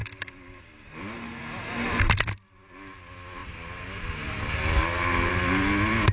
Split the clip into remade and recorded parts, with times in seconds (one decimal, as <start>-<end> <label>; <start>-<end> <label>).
0.0-6.1 recorded